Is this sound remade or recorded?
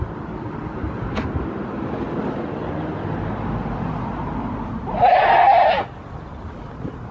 recorded